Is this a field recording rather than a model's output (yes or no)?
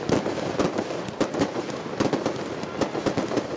yes